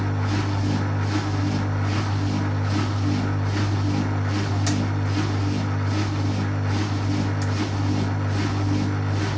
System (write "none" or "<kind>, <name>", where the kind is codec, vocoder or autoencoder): none